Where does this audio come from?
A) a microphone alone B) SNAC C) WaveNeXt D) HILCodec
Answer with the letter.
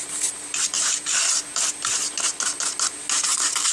A